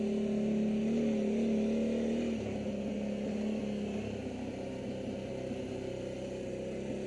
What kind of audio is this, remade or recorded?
recorded